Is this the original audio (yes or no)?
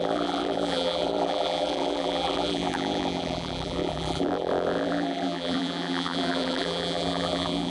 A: no